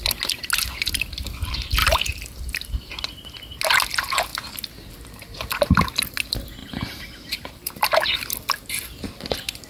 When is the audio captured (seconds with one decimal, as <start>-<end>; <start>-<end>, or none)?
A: 0.0-1.8; 2.9-6.6; 7.7-9.7